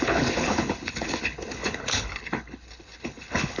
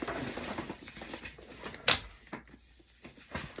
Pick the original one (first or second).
second